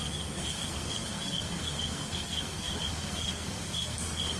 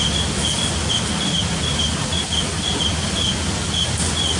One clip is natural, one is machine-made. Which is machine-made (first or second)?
first